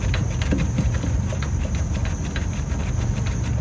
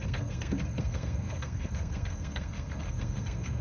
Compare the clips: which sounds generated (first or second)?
second